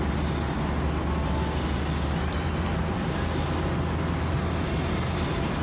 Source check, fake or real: real